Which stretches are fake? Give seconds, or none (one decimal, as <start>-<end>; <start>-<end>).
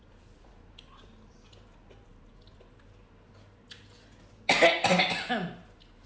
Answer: none